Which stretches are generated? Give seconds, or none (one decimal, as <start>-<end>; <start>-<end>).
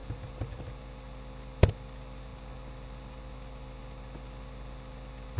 none